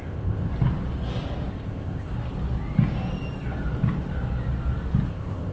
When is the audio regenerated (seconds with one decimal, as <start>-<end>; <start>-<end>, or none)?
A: 0.0-0.5; 1.5-2.1; 5.1-5.5

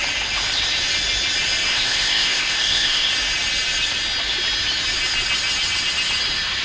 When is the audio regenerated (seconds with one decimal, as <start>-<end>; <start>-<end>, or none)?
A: 1.7-3.1

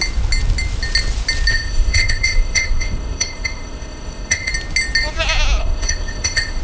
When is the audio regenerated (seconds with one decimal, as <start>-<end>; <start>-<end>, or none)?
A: 1.5-4.5; 5.6-6.6

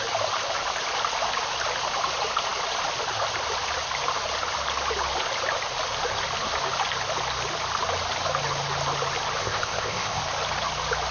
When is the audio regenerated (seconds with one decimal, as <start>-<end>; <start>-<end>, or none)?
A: 9.4-10.2

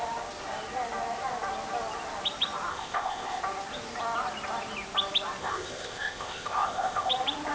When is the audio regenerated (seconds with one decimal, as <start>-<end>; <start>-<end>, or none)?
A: 2.7-3.4; 5.4-7.1